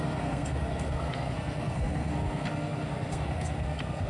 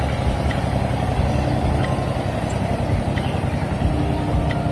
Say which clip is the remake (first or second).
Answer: first